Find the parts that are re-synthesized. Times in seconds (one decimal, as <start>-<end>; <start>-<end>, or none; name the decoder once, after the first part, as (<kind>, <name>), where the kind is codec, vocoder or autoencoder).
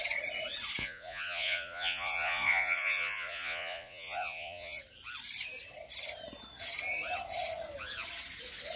0.8-4.8 (vocoder, Vocos)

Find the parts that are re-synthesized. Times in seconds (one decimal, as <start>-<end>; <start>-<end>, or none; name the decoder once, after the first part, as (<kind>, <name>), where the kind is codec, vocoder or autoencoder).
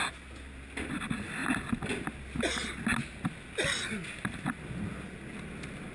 none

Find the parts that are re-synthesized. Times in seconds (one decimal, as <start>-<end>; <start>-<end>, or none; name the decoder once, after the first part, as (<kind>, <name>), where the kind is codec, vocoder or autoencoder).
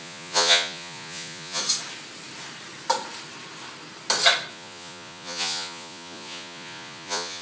0.0-1.6 (vocoder, Vocos); 4.5-7.4